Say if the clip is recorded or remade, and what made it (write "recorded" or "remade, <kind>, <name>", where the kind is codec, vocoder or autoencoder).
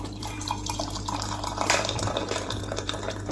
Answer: remade, vocoder, BigVGAN v2